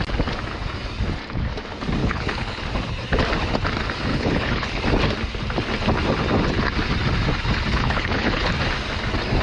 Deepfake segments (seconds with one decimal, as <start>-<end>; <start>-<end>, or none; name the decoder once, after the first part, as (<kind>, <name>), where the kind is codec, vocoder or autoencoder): 2.0-2.6 (codec, HILCodec); 4.1-4.8; 7.7-8.5

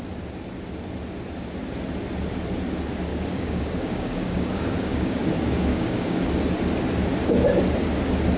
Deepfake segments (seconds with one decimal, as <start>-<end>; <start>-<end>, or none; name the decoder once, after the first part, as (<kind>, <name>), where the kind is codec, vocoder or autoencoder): 3.1-5.2 (codec, DAC); 5.7-6.2

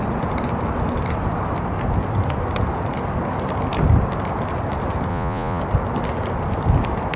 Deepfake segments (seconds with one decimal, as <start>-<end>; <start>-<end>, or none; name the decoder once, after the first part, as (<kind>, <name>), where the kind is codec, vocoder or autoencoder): 5.1-5.6 (vocoder, Vocos)

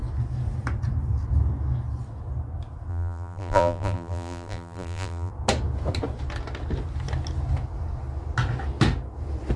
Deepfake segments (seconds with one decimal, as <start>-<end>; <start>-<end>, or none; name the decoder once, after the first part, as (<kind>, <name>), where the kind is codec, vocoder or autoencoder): 2.9-5.3 (vocoder, BigVGAN v2)